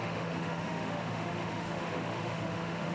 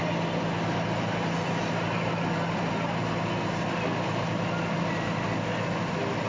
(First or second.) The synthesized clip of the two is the first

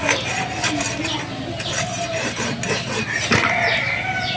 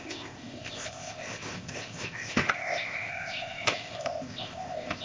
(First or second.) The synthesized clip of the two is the second